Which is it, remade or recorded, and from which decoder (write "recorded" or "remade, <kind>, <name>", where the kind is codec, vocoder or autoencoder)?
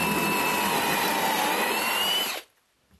remade, vocoder, BigVGAN v2